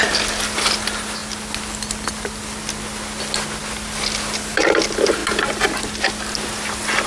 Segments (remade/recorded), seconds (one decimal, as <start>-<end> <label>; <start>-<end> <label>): 0.0-7.1 recorded